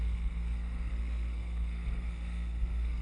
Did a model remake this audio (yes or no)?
yes